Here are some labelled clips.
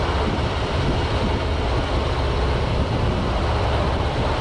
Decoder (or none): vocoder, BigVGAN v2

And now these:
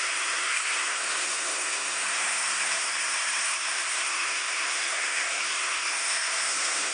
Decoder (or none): codec, SNAC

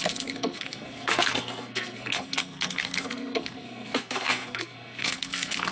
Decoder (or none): codec, SNAC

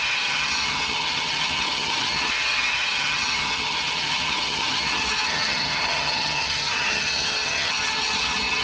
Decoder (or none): vocoder, HiFi-GAN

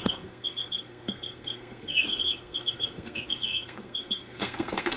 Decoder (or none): codec, SNAC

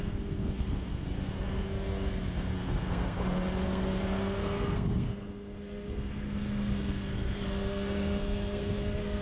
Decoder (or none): codec, SNAC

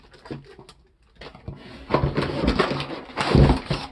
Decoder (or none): none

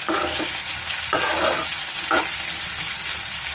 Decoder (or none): none